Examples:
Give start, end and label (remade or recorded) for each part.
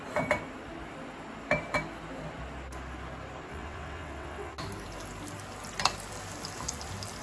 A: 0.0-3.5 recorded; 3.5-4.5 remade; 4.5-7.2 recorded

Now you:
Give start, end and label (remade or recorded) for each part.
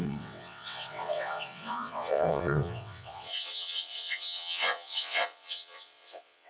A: 0.0-6.5 remade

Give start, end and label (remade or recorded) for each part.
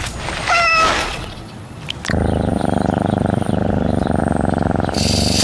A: 0.0-1.0 recorded; 1.0-1.8 remade; 1.8-5.4 recorded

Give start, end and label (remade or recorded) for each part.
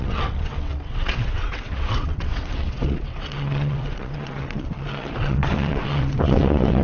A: 0.0-6.8 remade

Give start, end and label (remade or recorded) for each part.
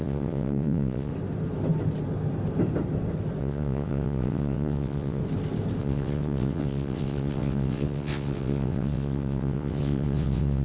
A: 0.0-1.1 remade; 1.1-3.4 recorded; 3.4-5.2 remade; 5.2-5.8 recorded; 5.8-10.6 remade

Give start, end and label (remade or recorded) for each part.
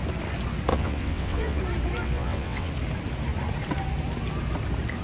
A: 0.0-0.7 recorded; 0.7-1.6 remade; 1.6-2.0 recorded; 2.0-2.7 remade; 2.7-5.0 recorded